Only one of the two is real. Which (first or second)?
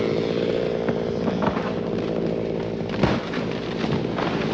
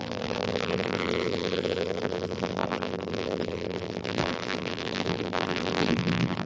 first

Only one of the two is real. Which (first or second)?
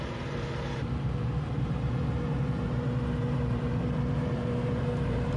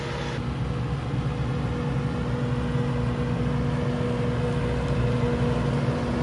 second